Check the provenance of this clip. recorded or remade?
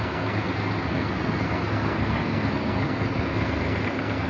remade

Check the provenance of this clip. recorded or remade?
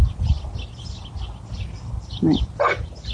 recorded